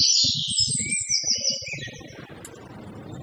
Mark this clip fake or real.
real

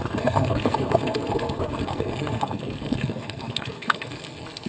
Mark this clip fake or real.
fake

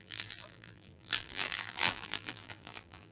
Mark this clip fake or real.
fake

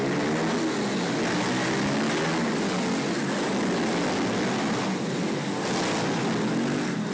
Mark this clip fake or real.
real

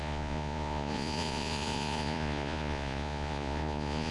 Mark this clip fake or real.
fake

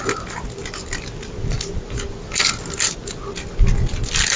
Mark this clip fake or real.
real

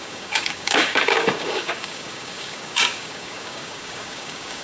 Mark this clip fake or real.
fake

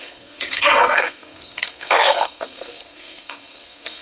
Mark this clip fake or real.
fake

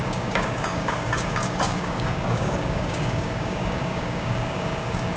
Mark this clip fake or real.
fake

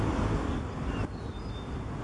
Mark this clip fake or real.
real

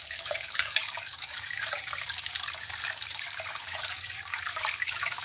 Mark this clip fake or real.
fake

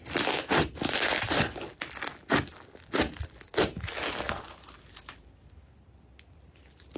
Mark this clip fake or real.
real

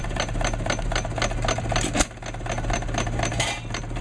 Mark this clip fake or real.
real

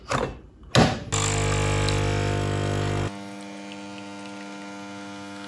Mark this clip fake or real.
real